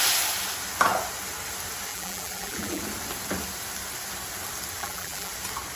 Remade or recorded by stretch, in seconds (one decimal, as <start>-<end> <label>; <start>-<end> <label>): 0.0-1.9 recorded; 1.9-2.8 remade; 2.8-4.8 recorded; 4.8-5.3 remade; 5.3-5.8 recorded